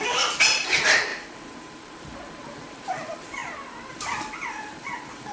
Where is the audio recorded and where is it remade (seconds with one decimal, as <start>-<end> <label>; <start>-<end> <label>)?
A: 0.0-3.4 remade; 3.4-3.9 recorded; 3.9-5.3 remade